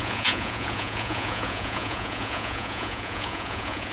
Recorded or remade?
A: remade